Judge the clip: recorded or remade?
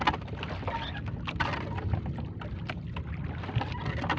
recorded